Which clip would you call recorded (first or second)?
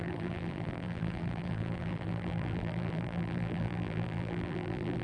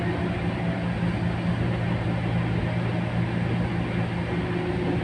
second